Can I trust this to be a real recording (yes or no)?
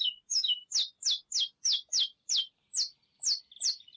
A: yes